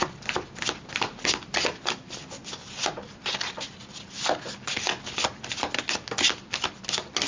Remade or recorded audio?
recorded